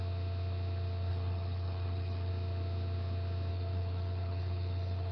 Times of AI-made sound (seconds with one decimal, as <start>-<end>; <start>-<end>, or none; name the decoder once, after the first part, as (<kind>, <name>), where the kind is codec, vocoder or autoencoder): 1.1-2.3 (codec, HILCodec); 3.5-5.1